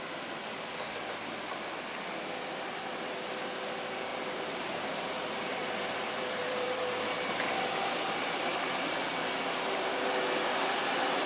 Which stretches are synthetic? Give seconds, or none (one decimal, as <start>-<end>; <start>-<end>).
4.1-7.0; 8.5-9.1